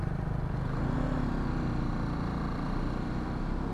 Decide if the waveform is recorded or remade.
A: recorded